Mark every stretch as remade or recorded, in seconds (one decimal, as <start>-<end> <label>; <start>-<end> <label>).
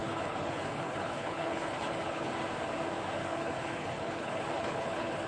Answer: 0.0-2.3 remade; 2.3-3.2 recorded; 3.2-5.3 remade